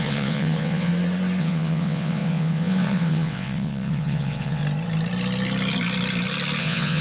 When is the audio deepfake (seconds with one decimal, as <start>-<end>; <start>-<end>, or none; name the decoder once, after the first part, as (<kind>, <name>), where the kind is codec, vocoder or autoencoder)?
0.0-0.9 (vocoder, WaveNeXt); 1.4-4.6; 6.6-7.0